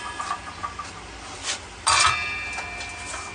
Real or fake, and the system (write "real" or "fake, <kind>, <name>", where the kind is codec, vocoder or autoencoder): real